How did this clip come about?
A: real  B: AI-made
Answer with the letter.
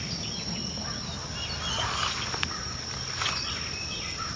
A